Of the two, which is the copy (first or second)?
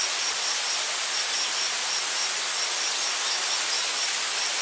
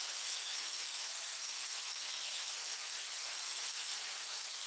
second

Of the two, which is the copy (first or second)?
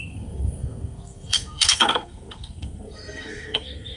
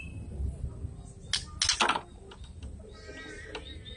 first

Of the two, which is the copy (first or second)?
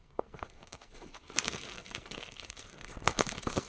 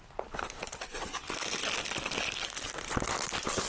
first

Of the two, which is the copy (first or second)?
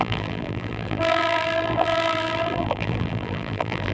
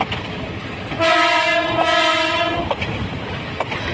first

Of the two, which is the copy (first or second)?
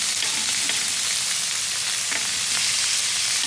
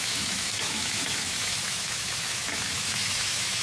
second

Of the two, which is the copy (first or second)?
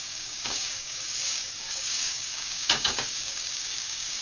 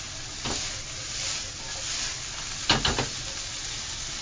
first